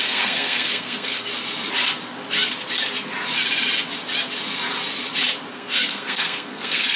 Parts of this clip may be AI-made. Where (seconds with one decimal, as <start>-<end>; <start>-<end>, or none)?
0.0-1.3; 5.5-7.0